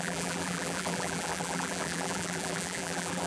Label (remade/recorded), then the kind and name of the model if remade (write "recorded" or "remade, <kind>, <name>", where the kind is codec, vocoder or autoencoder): remade, vocoder, BigVGAN v2